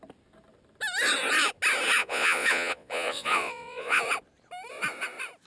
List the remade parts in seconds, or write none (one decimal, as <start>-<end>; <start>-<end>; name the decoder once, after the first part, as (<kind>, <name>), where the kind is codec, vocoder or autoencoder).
2.0-4.0 (vocoder, Vocos)